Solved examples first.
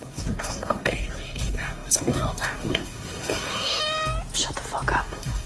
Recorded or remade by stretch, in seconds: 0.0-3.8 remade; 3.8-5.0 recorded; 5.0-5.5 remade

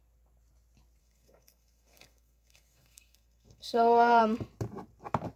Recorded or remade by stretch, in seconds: 0.0-1.0 recorded; 1.0-4.2 remade; 4.2-5.4 recorded

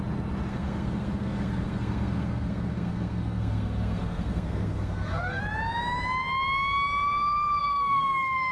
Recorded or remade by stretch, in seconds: 0.0-0.5 recorded; 0.5-5.4 remade; 5.4-7.6 recorded; 7.6-8.5 remade

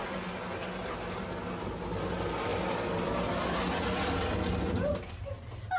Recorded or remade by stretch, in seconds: 0.0-5.8 recorded

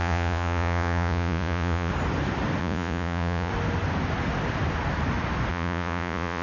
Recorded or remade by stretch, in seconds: 0.0-1.9 remade; 1.9-2.6 recorded; 2.6-3.5 remade; 3.5-5.5 recorded; 5.5-6.4 remade

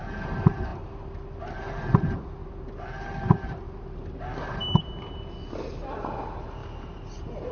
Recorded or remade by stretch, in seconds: 0.0-6.6 recorded; 6.6-7.5 remade

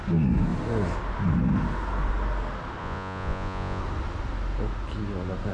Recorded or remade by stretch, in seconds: 0.0-2.8 recorded; 2.8-3.8 remade; 3.8-5.5 recorded

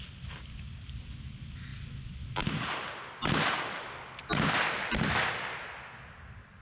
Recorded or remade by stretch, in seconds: 0.0-6.6 recorded